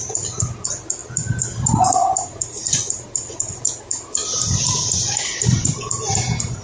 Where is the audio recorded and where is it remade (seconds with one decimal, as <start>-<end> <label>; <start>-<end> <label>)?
0.0-6.6 recorded